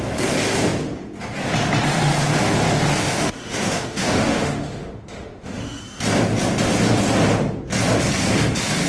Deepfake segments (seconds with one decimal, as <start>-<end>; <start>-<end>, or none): 3.0-5.8